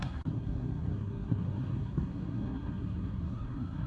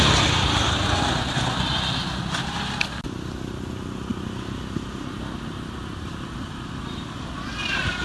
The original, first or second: second